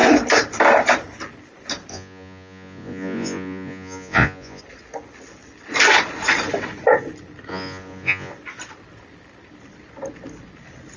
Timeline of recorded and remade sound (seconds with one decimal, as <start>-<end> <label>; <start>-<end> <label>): 0.0-1.9 recorded; 1.9-4.6 remade; 4.6-7.5 recorded; 7.5-8.3 remade; 8.3-11.0 recorded